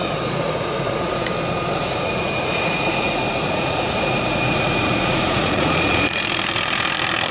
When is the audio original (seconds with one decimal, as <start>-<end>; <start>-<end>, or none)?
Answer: 1.3-1.8; 6.2-7.3

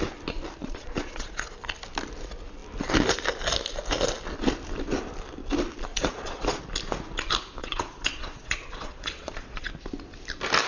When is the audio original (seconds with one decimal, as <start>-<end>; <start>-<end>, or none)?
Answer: 0.0-0.6; 1.5-5.9; 6.6-7.6; 9.7-10.7

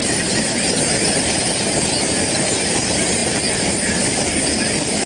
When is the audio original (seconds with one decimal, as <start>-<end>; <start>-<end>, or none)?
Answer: 0.0-5.1